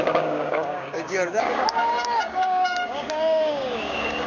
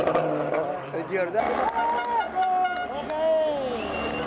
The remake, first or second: first